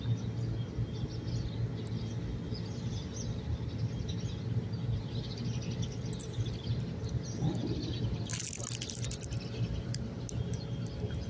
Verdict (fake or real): real